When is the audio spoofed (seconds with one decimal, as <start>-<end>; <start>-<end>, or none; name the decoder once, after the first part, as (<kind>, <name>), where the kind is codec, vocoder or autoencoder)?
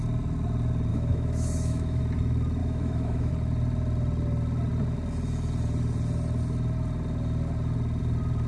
0.9-2.0 (autoencoder, DAC-VAE); 2.6-3.3